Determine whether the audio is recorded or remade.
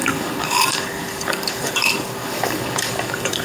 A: remade